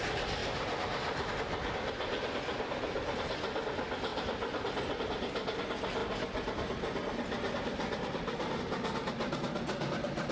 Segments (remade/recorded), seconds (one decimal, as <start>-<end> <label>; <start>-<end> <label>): 0.0-0.4 recorded; 0.4-1.3 remade; 1.3-10.3 recorded